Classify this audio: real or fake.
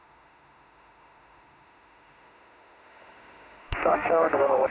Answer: fake